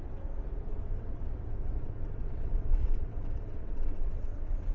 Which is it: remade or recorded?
remade